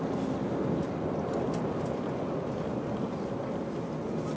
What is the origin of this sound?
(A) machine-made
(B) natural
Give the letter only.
B